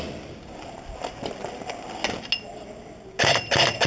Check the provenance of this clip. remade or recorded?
recorded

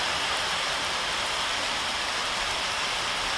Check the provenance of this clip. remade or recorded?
recorded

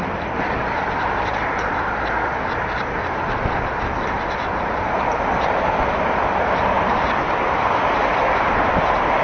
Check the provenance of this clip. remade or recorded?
remade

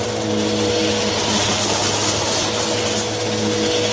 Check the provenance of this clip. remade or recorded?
recorded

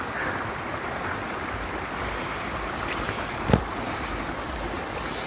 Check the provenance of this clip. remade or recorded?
recorded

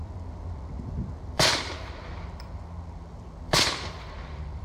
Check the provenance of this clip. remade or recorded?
remade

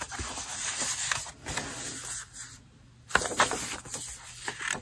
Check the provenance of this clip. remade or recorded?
recorded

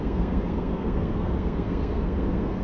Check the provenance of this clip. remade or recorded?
remade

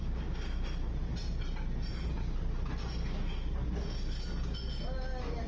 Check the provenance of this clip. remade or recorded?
recorded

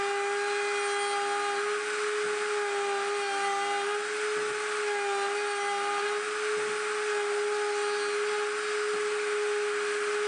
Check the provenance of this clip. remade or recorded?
recorded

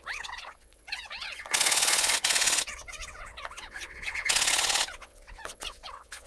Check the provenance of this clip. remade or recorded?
remade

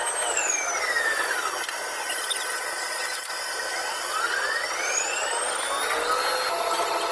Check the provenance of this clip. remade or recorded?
recorded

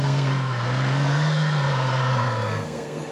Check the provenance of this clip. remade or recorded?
remade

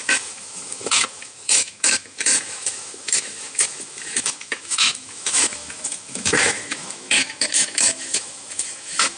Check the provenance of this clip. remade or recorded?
remade